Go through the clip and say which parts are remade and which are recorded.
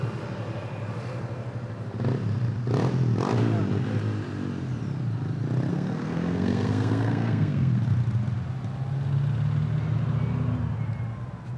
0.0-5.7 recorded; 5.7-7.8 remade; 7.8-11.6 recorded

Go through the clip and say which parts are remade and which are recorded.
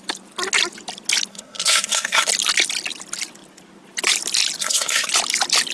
0.0-1.3 recorded; 1.3-2.3 remade; 2.3-4.6 recorded; 4.6-5.1 remade; 5.1-5.7 recorded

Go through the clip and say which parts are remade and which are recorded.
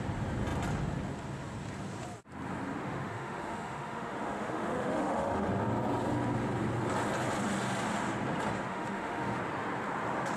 0.0-2.8 recorded; 2.8-5.5 remade; 5.5-8.7 recorded; 8.7-9.4 remade; 9.4-10.4 recorded